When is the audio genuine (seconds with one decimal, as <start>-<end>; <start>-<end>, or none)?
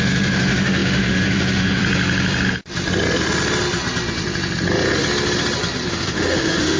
1.8-5.9